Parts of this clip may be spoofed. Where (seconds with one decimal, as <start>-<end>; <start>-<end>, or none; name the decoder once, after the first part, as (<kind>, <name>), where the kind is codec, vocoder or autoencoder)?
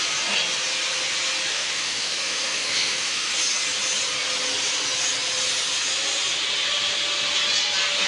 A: 1.5-3.3 (autoencoder, DAC-VAE)